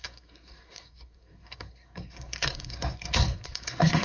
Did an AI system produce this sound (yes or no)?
yes